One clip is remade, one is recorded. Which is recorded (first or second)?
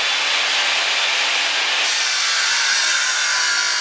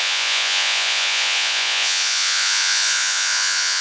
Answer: first